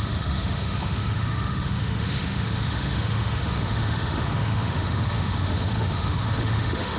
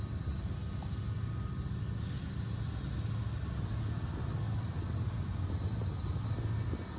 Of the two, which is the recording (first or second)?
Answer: second